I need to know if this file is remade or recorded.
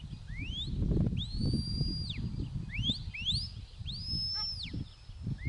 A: recorded